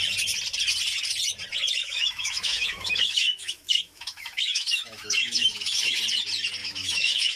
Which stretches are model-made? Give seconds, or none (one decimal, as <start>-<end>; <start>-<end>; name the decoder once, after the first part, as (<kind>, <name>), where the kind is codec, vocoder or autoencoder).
1.8-6.0 (autoencoder, DAC-VAE); 6.6-7.4